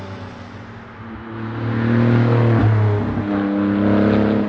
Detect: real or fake real